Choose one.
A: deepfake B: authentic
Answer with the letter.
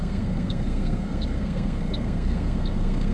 A